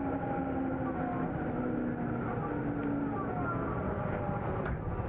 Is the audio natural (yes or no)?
yes